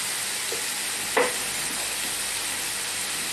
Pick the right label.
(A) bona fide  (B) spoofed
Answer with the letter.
A